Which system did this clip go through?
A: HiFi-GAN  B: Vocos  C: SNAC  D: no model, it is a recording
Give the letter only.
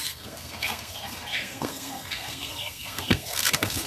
C